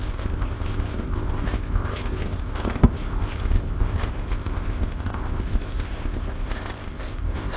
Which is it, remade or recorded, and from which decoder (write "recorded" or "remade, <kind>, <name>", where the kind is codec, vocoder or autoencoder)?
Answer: remade, codec, ZipCodec